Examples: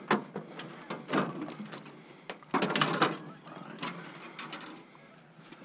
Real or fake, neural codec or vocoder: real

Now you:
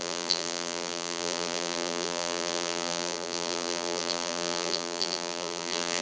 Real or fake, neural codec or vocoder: fake, vocoder, BigVGAN v2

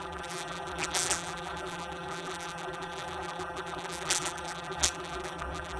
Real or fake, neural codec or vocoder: fake, vocoder, BigVGAN v2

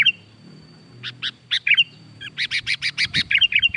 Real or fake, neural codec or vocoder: fake, vocoder, BigVGAN v2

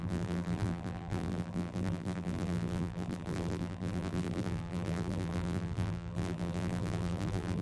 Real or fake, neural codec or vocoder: fake, vocoder, BigVGAN v2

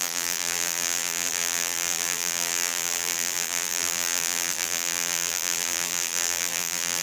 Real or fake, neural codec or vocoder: fake, vocoder, BigVGAN v2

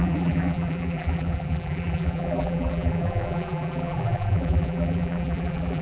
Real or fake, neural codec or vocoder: fake, vocoder, BigVGAN v2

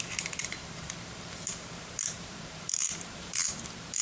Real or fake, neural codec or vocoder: fake, vocoder, BigVGAN v2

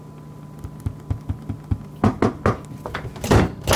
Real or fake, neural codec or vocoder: real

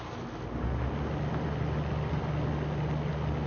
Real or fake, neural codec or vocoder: real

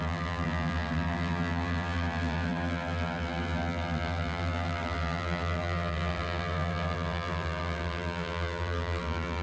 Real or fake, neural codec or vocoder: fake, vocoder, BigVGAN v2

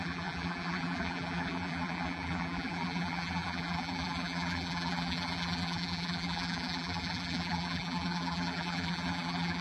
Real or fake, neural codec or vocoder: fake, vocoder, BigVGAN v2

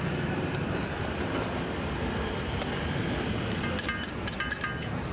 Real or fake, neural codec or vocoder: real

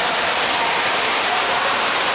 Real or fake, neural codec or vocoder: fake, vocoder, BigVGAN v2